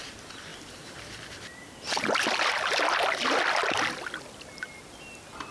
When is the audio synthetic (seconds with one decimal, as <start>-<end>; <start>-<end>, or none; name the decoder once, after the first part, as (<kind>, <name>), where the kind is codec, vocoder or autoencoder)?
0.5-3.8 (vocoder, BigVGAN v2)